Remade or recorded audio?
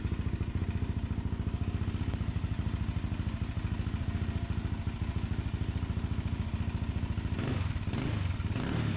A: recorded